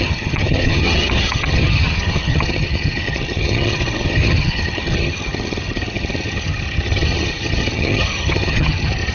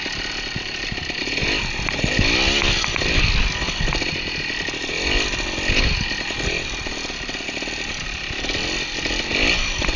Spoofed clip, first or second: first